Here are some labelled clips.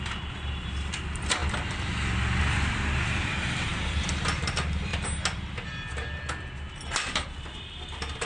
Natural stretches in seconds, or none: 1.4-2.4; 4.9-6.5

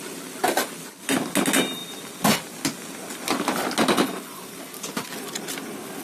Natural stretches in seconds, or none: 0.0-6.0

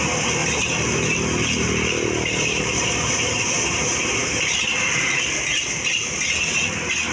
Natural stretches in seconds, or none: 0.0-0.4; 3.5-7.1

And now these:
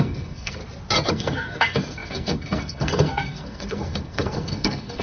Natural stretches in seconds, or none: 0.6-1.1